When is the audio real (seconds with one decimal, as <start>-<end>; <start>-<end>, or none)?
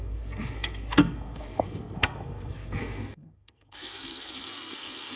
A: none